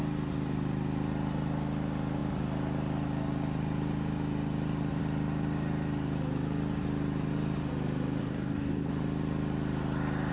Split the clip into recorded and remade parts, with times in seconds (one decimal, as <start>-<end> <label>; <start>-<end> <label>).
0.0-8.2 recorded; 8.2-8.9 remade; 8.9-10.3 recorded